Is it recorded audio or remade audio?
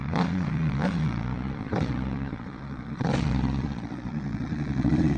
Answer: remade